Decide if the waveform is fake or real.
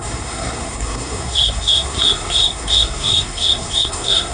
fake